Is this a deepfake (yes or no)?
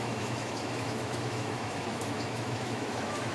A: yes